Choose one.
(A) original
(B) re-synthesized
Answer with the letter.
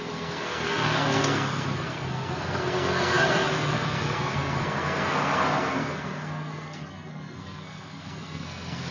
B